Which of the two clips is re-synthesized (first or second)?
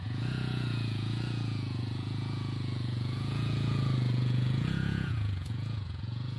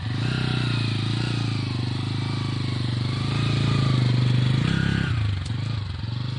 first